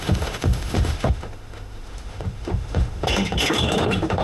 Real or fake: fake